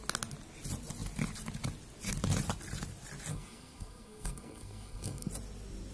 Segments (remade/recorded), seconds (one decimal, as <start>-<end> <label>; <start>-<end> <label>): 0.0-3.3 recorded; 3.3-5.3 remade; 5.3-5.9 recorded